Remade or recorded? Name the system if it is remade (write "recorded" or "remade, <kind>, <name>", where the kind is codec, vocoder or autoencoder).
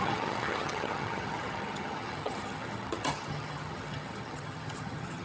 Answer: remade, vocoder, HiFi-GAN